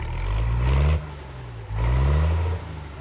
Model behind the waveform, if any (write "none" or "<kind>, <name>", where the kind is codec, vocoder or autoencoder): none